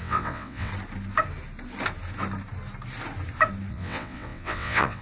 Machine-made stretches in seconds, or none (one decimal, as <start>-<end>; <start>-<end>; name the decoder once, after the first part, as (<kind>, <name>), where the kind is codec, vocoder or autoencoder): 0.0-0.7 (vocoder, WaveNeXt); 3.7-5.0